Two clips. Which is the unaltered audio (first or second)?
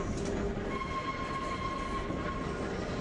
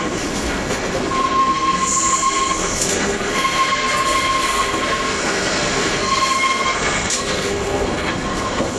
first